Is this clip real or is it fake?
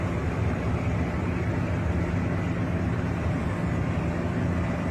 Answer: real